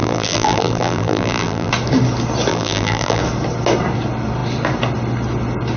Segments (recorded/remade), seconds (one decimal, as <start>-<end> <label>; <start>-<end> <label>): 0.0-1.7 remade; 1.7-2.5 recorded; 2.5-3.2 remade; 3.2-5.8 recorded